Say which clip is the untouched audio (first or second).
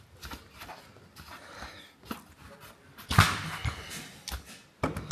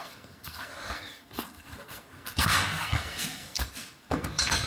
first